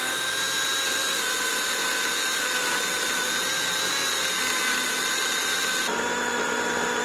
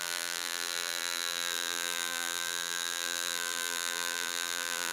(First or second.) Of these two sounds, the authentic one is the first